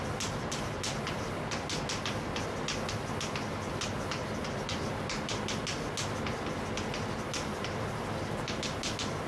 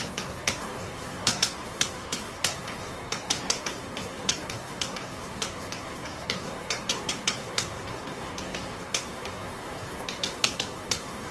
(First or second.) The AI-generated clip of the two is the second